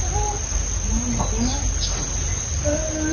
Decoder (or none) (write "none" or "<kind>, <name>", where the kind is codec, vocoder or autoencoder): none